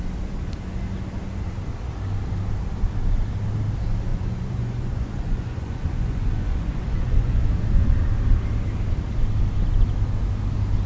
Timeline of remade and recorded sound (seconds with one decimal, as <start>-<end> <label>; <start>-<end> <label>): 0.0-4.1 recorded; 4.1-7.5 remade; 7.5-10.9 recorded